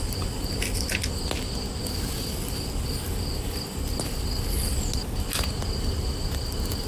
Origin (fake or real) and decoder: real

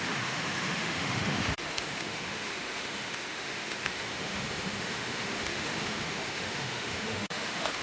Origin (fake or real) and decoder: fake, autoencoder, DAC-VAE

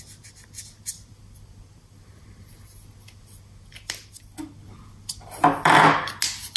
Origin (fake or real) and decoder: real